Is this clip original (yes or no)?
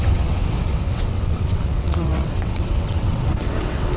no